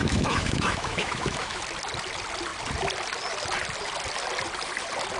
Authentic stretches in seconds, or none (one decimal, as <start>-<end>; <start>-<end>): 1.6-5.2